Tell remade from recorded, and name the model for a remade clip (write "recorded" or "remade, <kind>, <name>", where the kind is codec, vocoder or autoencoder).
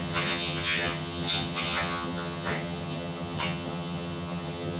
remade, vocoder, HiFi-GAN